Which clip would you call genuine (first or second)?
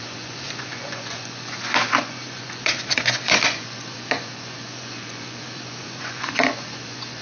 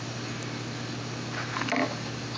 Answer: second